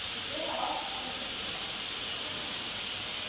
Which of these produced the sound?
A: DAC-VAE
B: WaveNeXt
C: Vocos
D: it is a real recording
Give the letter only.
D